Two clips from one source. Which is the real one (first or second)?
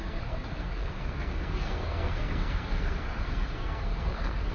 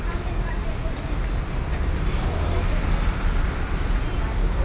second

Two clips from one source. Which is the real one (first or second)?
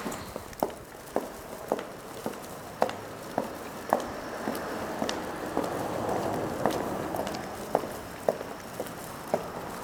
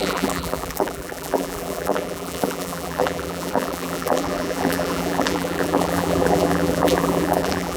first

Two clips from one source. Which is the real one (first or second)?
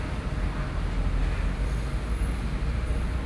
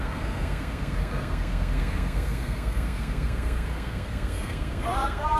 first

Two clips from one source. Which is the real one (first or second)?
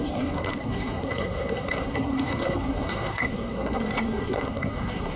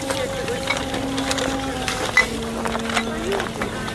second